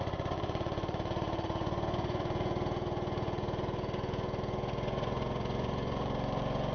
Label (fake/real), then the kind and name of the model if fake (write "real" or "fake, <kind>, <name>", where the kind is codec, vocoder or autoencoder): fake, vocoder, Vocos